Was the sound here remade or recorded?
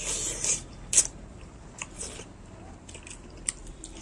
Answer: recorded